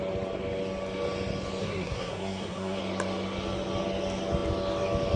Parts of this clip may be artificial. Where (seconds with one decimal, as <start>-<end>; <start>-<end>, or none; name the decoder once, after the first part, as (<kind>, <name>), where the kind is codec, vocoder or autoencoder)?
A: 1.6-2.8 (codec, SNAC)